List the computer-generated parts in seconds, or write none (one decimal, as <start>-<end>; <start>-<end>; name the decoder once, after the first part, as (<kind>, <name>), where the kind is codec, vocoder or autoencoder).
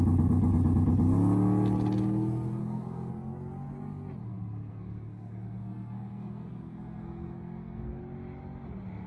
2.6-3.1 (codec, SNAC); 4.2-8.0